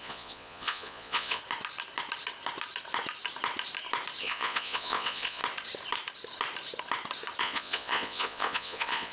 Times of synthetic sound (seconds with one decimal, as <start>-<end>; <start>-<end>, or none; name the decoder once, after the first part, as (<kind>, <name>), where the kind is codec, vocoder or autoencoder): 0.0-1.4 (vocoder, Vocos); 4.2-5.4; 7.4-9.1